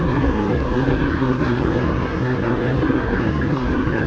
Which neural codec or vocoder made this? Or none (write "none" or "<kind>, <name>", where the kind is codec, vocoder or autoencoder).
codec, SNAC